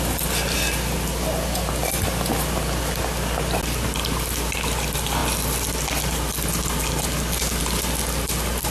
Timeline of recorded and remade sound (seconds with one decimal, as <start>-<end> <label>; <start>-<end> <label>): 0.0-8.7 recorded